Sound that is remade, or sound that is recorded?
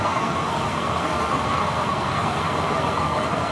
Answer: remade